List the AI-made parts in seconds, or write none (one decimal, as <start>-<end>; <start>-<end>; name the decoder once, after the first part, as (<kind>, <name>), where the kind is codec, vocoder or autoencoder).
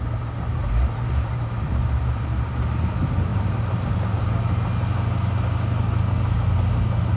0.6-2.6 (vocoder, BigVGAN v2); 3.3-4.4